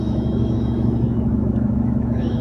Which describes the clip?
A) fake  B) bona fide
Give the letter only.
A